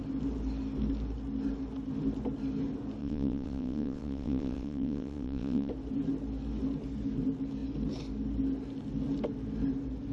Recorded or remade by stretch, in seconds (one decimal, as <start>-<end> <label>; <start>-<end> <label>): 0.0-3.0 recorded; 3.0-5.7 remade; 5.7-10.1 recorded